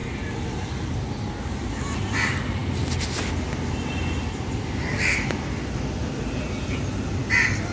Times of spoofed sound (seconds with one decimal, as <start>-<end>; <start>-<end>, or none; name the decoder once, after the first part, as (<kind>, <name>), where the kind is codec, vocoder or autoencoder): none

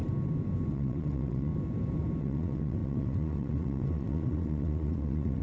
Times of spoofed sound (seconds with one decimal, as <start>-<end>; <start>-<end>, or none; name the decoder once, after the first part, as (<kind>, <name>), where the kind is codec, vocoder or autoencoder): 0.7-1.5 (vocoder, WaveNeXt); 2.2-5.4

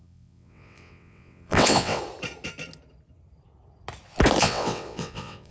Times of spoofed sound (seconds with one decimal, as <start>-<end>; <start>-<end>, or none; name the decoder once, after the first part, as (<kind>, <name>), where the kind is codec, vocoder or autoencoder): 0.0-2.0 (vocoder, WaveNeXt); 4.4-5.5

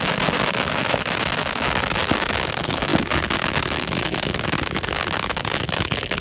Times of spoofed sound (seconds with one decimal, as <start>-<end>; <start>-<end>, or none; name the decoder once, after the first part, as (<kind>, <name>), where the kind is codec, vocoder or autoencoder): 0.0-6.2 (autoencoder, DAC-VAE)

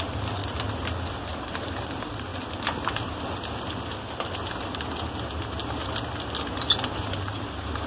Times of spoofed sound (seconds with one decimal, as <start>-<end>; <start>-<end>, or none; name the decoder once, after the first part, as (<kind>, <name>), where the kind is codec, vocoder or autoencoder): 0.0-0.4 (vocoder, BigVGAN v2); 1.1-2.3; 6.9-7.9

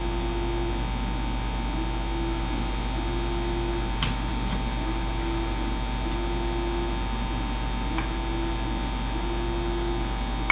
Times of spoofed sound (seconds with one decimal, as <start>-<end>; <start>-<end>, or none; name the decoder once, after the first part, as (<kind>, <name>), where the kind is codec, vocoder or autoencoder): none